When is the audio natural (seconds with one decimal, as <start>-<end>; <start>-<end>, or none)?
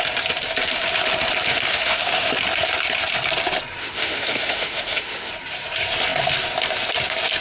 0.0-1.5; 2.3-3.8; 5.3-7.4